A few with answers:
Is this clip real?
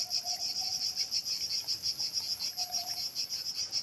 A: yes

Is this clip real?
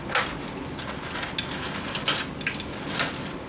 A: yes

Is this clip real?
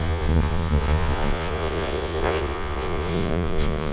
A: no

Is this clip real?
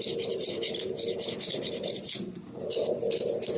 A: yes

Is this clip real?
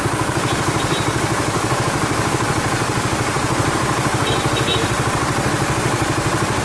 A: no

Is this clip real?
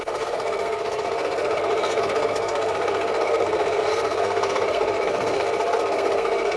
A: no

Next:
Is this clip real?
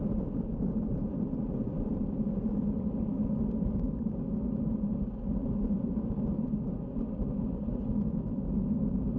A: yes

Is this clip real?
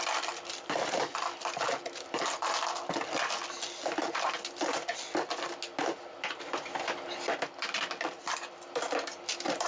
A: yes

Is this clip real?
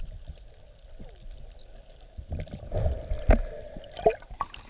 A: yes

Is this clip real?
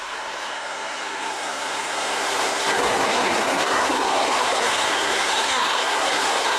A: no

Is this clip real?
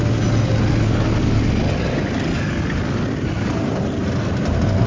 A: yes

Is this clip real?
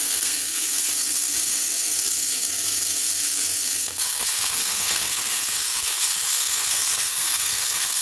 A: no